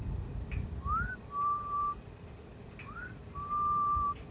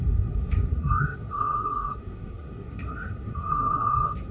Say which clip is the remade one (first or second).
second